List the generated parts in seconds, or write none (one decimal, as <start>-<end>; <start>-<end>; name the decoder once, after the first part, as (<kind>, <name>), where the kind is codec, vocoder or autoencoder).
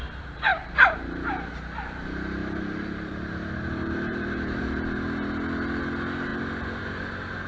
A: 0.5-1.5 (vocoder, BigVGAN v2); 2.4-4.6